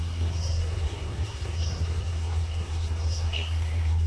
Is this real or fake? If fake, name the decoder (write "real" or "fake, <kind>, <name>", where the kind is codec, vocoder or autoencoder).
fake, codec, SNAC